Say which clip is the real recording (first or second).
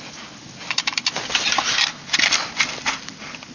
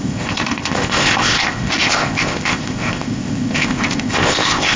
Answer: first